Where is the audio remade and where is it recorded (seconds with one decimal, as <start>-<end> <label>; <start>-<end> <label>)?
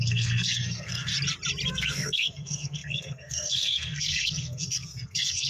0.0-1.1 remade; 1.1-1.7 recorded; 1.7-5.5 remade